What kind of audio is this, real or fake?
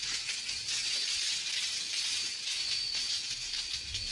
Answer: real